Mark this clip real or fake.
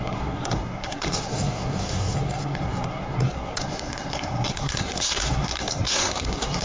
fake